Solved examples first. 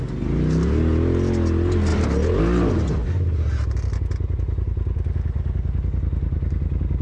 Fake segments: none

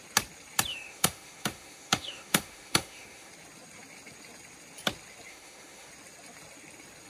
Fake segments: 0.7-3.3 (autoencoder, DAC-VAE); 5.3-5.9

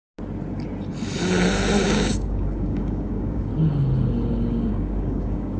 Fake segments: 1.8-3.5 (codec, DAC); 4.3-5.6

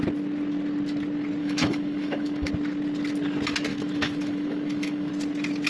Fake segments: 1.4-2.5 (autoencoder, DAC-VAE); 3.7-5.1

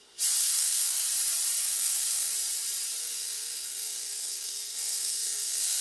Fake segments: 0.4-1.0 (codec, SNAC); 1.6-2.3; 3.0-5.8

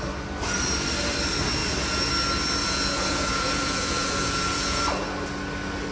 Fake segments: 2.6-4.8 (vocoder, Vocos)

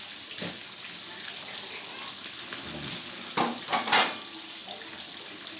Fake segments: none

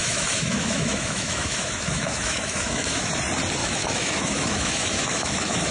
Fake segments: 0.0-3.1 (autoencoder, DAC-VAE); 3.6-5.7